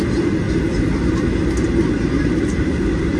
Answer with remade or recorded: remade